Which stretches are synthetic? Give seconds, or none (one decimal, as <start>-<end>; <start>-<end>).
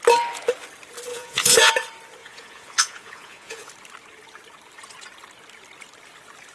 1.1-1.7; 2.2-3.7